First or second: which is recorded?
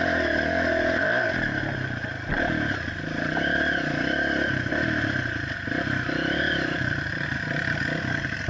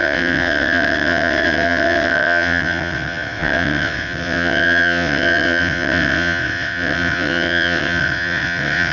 first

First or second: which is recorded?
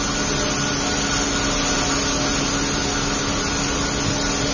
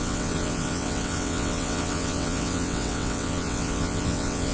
first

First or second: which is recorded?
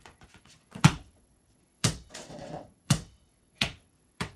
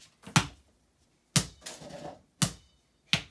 second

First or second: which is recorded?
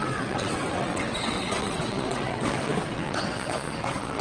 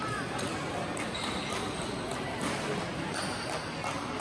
second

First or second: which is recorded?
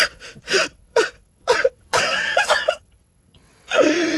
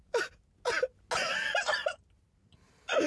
second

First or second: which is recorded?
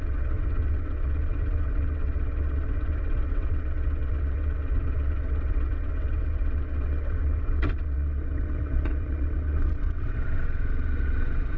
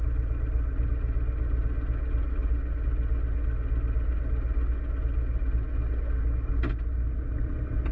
second